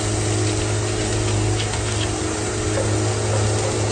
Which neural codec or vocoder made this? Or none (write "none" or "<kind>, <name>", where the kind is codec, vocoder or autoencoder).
none